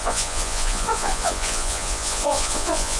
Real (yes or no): no